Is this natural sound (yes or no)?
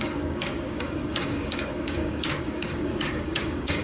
no